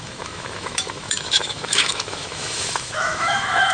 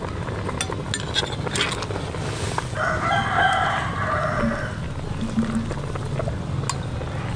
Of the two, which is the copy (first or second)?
first